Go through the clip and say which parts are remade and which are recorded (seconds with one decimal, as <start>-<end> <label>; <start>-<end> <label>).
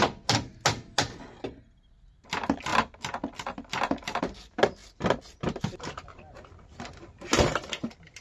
0.0-8.2 recorded